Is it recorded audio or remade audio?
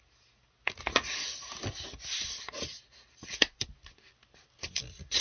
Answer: recorded